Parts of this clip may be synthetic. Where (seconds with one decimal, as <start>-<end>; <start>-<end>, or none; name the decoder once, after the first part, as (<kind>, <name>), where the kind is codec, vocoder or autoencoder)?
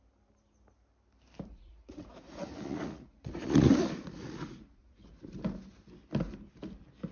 1.5-5.3 (vocoder, Vocos)